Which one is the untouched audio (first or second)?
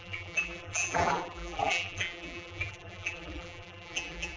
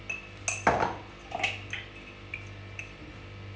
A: second